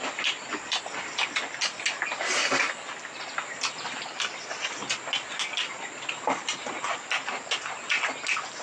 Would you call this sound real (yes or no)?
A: yes